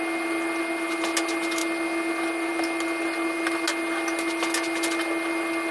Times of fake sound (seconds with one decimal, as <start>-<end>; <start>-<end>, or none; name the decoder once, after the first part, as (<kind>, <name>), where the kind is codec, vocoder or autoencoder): none